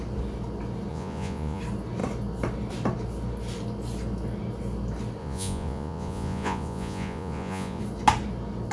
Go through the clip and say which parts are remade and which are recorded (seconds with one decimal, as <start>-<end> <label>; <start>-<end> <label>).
0.0-0.9 recorded; 0.9-1.6 remade; 1.6-5.2 recorded; 5.2-7.8 remade; 7.8-8.7 recorded